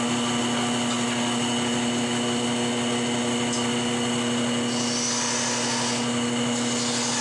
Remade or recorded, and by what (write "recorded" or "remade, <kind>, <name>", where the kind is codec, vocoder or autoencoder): recorded